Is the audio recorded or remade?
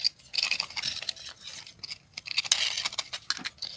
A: recorded